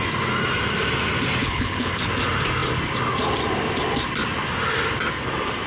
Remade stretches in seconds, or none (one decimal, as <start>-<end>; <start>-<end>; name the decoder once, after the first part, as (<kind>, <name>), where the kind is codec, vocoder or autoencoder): 1.4-2.1 (codec, HILCodec)

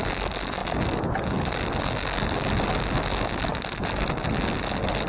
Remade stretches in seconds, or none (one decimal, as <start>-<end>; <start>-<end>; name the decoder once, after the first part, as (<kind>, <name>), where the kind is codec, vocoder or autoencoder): none